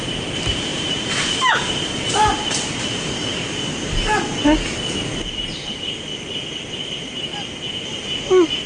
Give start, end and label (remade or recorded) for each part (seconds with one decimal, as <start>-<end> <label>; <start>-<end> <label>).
0.0-4.3 remade; 4.3-5.3 recorded; 5.3-6.1 remade; 6.1-6.7 recorded; 6.7-7.3 remade; 7.3-8.2 recorded; 8.2-8.7 remade